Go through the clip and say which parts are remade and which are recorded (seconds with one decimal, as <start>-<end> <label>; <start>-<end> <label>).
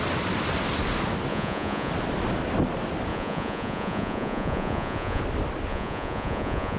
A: 0.0-1.3 recorded; 1.3-1.9 remade; 1.9-3.1 recorded; 3.1-5.2 remade; 5.2-5.7 recorded; 5.7-6.8 remade